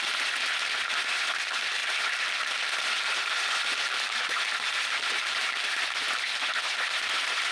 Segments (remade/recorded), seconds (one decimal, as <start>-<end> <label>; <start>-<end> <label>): 0.0-1.8 recorded; 1.8-2.7 remade; 2.7-3.7 recorded; 3.7-6.2 remade; 6.2-7.5 recorded